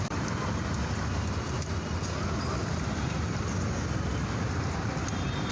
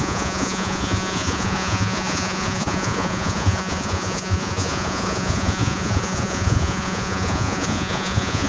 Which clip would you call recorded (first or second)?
first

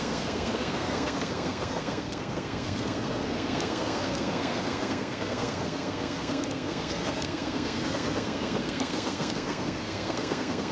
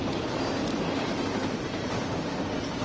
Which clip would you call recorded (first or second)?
second